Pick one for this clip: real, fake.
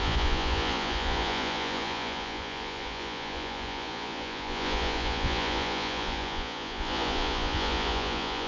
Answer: fake